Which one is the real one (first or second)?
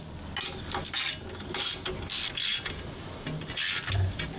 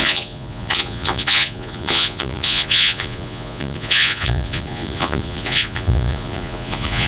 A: first